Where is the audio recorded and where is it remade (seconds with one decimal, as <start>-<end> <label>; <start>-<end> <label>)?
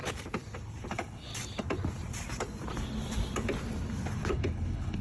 0.0-0.9 recorded; 0.9-1.3 remade; 1.3-4.3 recorded; 4.3-5.0 remade